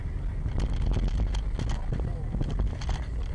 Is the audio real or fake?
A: real